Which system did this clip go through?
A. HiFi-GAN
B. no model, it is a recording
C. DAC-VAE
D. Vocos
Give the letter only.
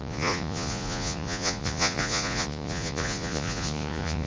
D